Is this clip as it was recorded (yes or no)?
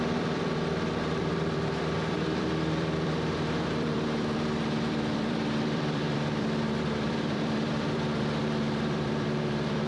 no